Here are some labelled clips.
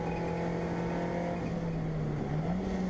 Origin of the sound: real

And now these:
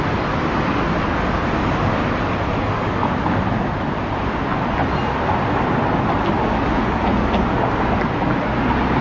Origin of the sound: real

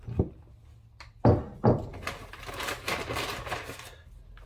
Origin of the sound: real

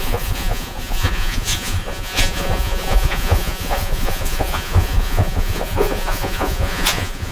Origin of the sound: fake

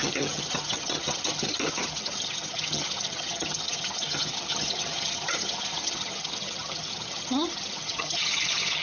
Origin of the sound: fake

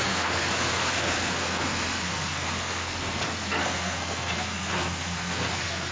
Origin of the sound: fake